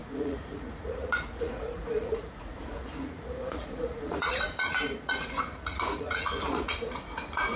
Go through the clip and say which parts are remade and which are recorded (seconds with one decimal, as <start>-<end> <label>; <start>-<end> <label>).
0.0-7.6 remade